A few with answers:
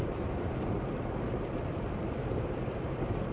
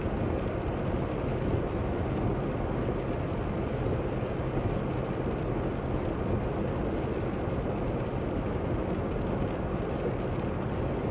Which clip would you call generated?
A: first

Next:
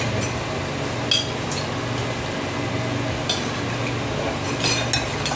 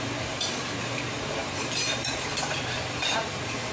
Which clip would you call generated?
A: second